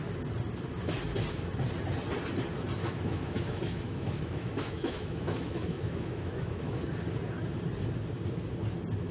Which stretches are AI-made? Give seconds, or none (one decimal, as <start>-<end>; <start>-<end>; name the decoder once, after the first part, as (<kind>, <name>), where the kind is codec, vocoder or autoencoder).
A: 2.8-6.8 (autoencoder, DAC-VAE)